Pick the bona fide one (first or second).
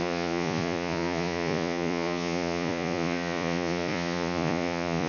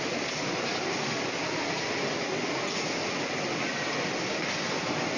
second